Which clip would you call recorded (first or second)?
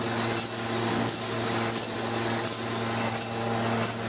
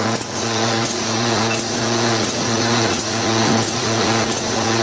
first